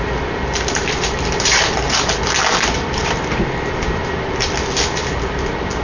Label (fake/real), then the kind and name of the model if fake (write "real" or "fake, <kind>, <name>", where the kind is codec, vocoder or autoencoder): fake, vocoder, BigVGAN v2